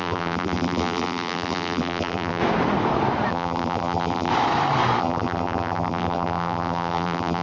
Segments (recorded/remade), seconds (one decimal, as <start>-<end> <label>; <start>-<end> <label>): 0.0-2.4 remade; 2.4-3.3 recorded; 3.3-4.3 remade; 4.3-5.0 recorded; 5.0-7.4 remade